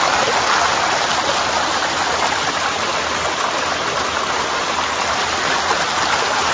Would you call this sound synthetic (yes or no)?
no